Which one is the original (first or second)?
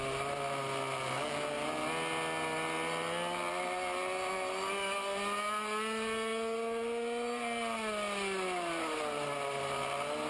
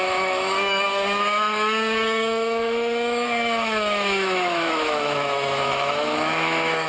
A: first